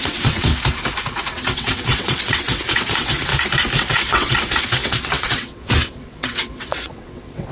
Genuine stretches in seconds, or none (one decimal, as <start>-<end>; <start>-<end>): 0.5-1.3; 3.3-3.8